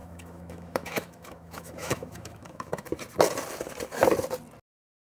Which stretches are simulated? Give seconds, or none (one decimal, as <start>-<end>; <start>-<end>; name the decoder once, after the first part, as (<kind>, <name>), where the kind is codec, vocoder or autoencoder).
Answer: 0.0-2.9 (autoencoder, DAC-VAE)